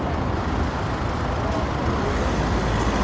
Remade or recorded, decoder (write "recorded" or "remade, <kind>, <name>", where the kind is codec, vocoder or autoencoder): recorded